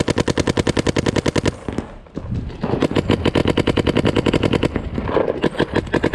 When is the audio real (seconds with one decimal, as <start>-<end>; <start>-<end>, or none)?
0.0-6.1

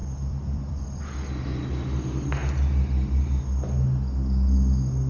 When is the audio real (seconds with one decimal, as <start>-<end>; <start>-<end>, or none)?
1.0-5.1

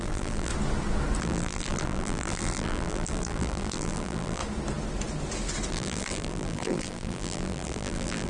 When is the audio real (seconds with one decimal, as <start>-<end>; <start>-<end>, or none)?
0.5-1.2; 4.4-5.7